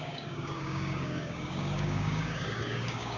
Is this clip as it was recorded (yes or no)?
no